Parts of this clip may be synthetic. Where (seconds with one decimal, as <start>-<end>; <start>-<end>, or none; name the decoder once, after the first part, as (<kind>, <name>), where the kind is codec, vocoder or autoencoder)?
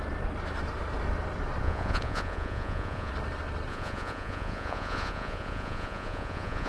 1.6-3.1 (vocoder, Vocos); 3.7-6.7